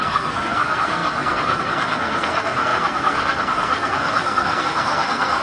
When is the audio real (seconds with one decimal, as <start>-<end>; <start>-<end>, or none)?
none